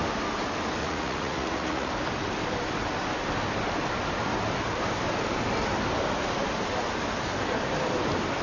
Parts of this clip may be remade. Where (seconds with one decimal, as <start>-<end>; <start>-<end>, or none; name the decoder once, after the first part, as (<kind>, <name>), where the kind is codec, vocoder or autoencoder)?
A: 0.8-1.9 (vocoder, Vocos)